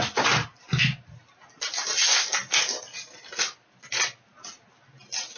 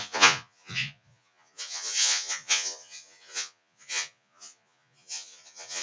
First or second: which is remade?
second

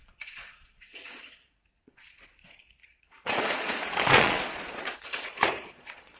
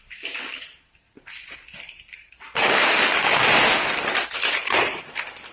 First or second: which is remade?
first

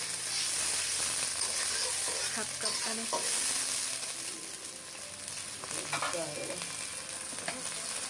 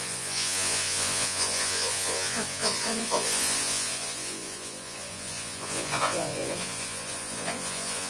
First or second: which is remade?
second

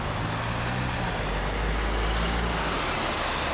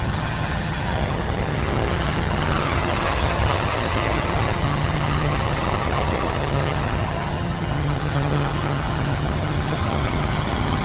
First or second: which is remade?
second